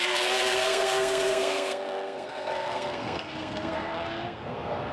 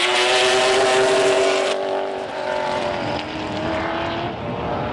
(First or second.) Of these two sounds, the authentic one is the second